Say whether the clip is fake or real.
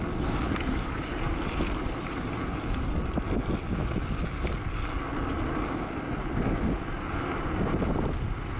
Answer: real